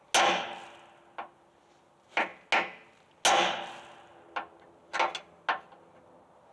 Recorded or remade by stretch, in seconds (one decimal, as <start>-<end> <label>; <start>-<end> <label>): 0.0-6.5 recorded